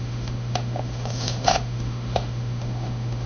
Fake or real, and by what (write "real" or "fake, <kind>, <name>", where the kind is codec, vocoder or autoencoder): fake, autoencoder, DAC-VAE